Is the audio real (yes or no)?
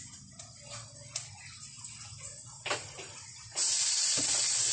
yes